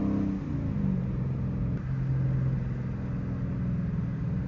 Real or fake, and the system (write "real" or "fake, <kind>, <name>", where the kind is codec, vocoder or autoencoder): real